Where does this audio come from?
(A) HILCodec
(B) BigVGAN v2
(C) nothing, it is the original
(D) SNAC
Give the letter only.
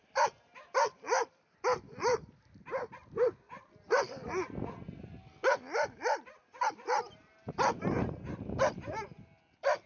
C